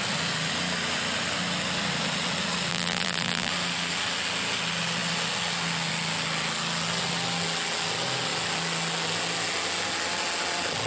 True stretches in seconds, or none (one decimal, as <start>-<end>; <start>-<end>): 0.0-2.7; 3.5-10.9